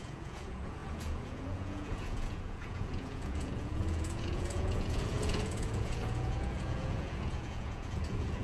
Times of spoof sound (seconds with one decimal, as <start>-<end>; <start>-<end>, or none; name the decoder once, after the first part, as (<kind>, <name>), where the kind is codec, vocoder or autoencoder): 0.0-8.4 (vocoder, Vocos)